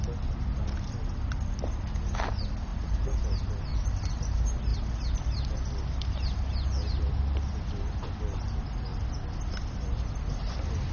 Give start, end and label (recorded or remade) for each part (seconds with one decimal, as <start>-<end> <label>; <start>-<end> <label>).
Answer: 0.0-2.7 recorded; 2.7-3.3 remade; 3.3-10.9 recorded